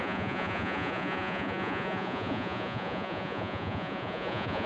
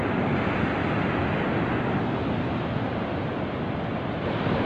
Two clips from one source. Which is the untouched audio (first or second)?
second